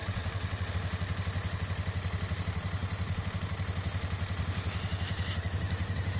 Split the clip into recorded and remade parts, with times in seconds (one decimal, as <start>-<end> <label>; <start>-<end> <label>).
0.0-0.7 remade; 0.7-6.2 recorded